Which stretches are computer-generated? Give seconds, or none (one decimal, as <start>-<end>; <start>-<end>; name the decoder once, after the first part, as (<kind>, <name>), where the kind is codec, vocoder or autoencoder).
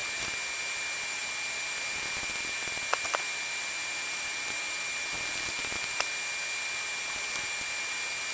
none